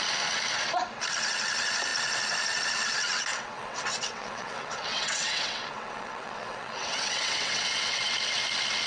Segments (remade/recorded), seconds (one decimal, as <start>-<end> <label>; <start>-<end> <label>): 0.0-3.3 recorded; 3.3-8.0 remade; 8.0-8.9 recorded